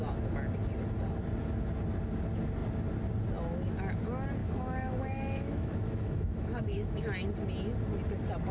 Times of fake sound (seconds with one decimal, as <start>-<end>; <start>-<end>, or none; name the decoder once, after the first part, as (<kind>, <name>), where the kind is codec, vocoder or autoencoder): 4.4-7.0 (autoencoder, DAC-VAE)